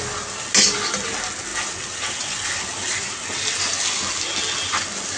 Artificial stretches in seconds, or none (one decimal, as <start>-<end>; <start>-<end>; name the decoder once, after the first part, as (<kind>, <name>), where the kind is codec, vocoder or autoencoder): none